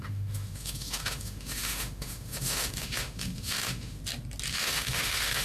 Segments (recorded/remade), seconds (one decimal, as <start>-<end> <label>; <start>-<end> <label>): 0.0-4.0 remade; 4.0-4.5 recorded; 4.5-5.4 remade

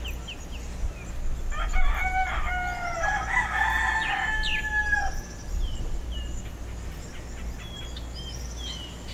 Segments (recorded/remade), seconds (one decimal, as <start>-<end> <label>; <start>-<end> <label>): 0.0-9.1 recorded

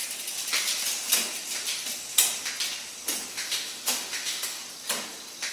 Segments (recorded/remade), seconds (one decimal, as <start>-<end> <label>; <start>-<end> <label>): 0.0-3.3 recorded; 3.3-4.6 remade; 4.6-5.5 recorded

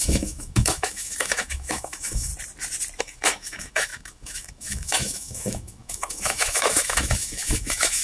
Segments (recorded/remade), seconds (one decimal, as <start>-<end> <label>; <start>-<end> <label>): 0.0-2.3 remade; 2.3-3.0 recorded; 3.0-8.0 remade

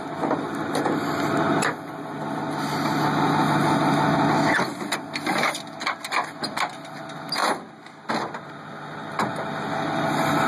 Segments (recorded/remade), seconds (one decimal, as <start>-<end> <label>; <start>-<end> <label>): 0.0-10.5 recorded

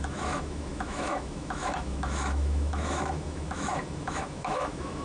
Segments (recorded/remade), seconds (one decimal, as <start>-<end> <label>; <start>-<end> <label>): 0.0-5.0 remade